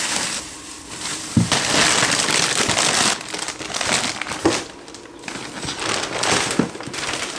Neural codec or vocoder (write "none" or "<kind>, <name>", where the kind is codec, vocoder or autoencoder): none